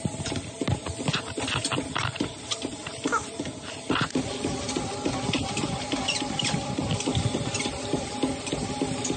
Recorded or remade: recorded